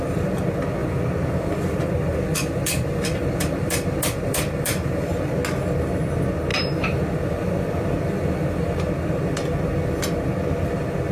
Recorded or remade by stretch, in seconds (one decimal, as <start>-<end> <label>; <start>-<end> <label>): 0.0-0.8 recorded; 0.8-5.3 remade; 5.3-6.5 recorded; 6.5-8.9 remade; 8.9-11.1 recorded